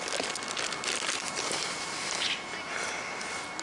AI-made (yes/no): no